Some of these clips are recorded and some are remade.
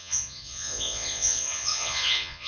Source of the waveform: remade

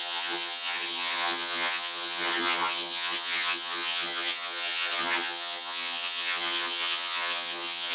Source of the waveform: remade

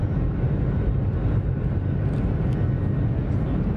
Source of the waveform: recorded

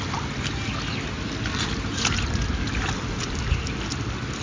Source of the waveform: recorded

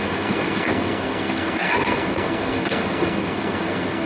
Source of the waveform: remade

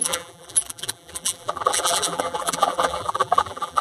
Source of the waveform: remade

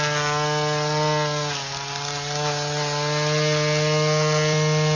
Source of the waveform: recorded